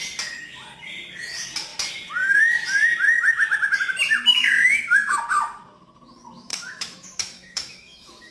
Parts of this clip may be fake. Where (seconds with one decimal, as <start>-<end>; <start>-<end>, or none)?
4.3-5.2; 6.5-8.3